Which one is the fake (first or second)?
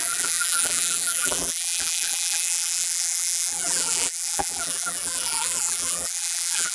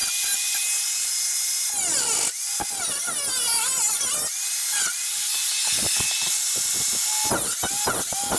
first